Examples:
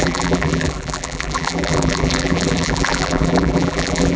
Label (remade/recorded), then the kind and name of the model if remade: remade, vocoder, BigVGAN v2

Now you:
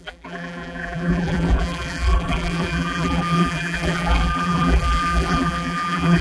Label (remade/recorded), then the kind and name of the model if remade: remade, vocoder, BigVGAN v2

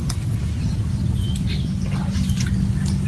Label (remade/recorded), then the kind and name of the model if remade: recorded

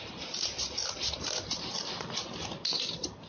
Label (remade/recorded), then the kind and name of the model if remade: recorded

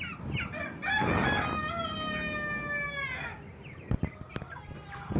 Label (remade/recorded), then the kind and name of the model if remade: recorded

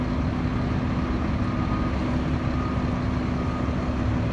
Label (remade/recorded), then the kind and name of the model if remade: recorded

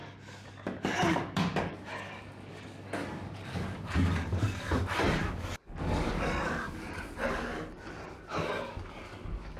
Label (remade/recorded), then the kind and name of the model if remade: remade, codec, DAC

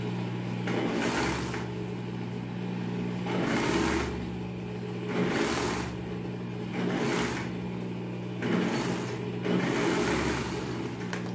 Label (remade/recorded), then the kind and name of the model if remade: recorded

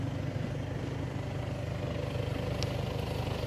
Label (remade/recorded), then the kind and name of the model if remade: recorded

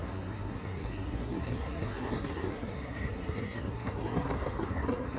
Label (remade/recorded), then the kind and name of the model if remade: remade, codec, SNAC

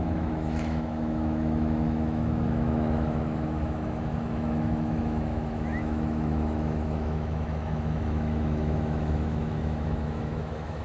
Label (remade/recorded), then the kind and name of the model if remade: remade, autoencoder, DAC-VAE